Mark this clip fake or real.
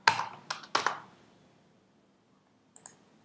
real